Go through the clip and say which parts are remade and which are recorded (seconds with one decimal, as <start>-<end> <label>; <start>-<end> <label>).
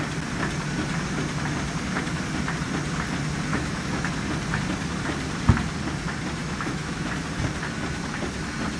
0.0-3.5 recorded; 3.5-4.1 remade; 4.1-6.4 recorded; 6.4-7.1 remade; 7.1-8.8 recorded